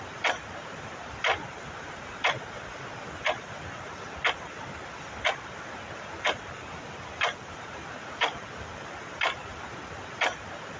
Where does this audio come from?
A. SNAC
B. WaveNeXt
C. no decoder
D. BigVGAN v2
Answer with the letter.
C